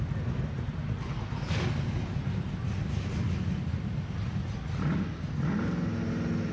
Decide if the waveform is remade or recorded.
recorded